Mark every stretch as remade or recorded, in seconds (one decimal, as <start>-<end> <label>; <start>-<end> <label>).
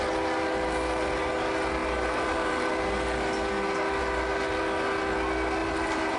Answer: 0.0-1.8 recorded; 1.8-2.7 remade; 2.7-5.6 recorded; 5.6-6.2 remade